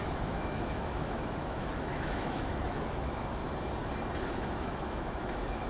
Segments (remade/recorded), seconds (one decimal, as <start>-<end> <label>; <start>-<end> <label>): 0.0-3.4 remade; 3.4-4.3 recorded; 4.3-5.7 remade